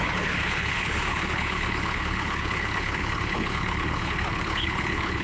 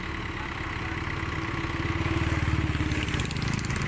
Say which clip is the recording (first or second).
second